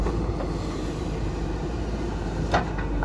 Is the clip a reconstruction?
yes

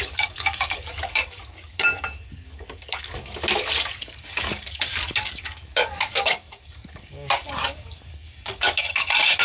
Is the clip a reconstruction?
yes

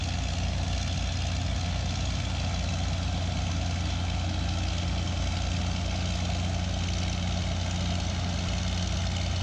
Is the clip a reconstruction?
no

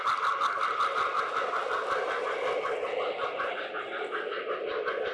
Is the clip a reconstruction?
no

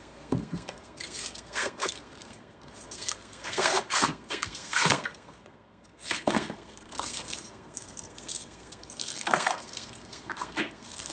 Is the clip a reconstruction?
yes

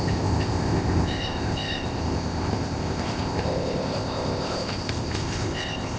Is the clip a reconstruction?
yes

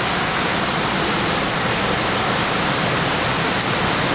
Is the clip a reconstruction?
no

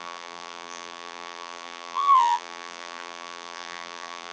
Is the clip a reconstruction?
yes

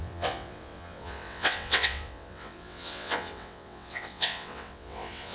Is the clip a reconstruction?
yes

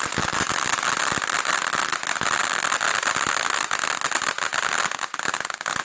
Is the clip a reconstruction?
no